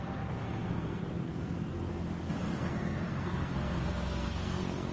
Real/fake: fake